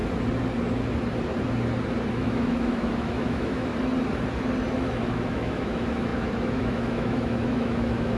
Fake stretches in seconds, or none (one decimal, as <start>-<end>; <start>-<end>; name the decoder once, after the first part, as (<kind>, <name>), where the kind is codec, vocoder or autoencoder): 2.1-3.7 (autoencoder, DAC-VAE); 4.7-8.2